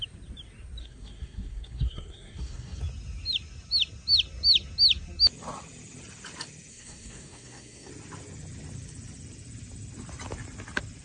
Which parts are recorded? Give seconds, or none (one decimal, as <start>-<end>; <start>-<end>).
0.0-0.8; 2.8-6.7; 7.9-11.0